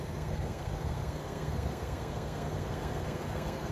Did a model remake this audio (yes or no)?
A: yes